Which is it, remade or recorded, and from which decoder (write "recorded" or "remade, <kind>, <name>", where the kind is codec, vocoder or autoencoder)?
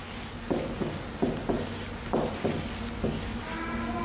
recorded